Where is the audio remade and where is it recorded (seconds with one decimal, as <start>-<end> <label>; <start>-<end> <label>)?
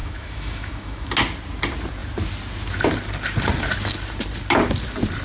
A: 0.0-1.1 remade; 1.1-5.2 recorded